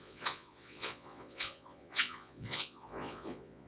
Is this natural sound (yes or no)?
no